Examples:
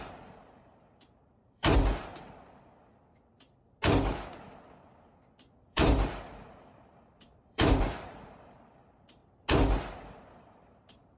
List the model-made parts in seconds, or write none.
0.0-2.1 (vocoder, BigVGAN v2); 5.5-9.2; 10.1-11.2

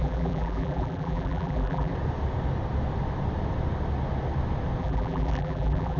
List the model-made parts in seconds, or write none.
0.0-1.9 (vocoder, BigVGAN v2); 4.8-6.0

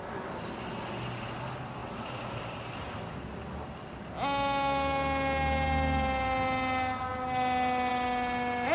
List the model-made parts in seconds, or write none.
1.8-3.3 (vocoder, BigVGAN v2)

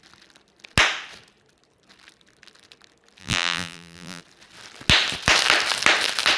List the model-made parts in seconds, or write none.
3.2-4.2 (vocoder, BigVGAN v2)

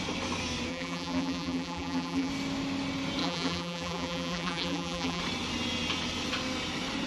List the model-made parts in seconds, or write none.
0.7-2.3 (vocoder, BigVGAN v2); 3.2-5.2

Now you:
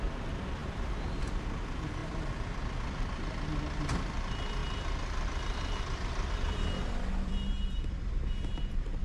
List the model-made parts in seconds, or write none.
0.6-1.2 (vocoder, BigVGAN v2); 2.0-2.6; 4.6-9.0